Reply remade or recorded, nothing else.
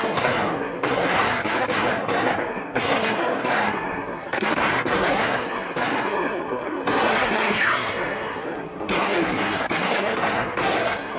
remade